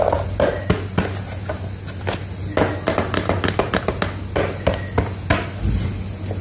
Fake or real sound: real